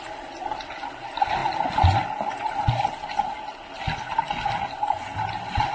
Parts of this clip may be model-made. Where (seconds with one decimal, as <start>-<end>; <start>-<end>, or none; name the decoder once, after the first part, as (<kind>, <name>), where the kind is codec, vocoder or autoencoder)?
none